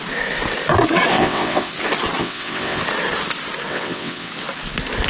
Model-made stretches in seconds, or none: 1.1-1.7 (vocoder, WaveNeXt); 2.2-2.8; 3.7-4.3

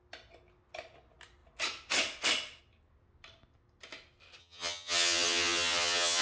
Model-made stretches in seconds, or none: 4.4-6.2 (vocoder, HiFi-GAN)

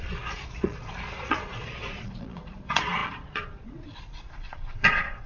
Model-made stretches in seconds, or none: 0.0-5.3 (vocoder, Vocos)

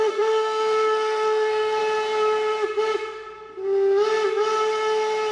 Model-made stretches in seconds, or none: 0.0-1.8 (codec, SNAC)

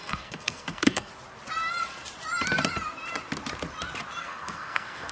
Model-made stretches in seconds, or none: 0.0-1.1 (codec, SNAC); 4.2-5.1

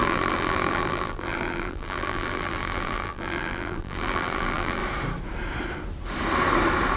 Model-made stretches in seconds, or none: 0.0-4.8 (vocoder, BigVGAN v2)